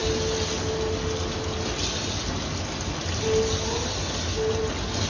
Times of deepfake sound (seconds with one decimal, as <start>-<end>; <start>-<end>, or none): none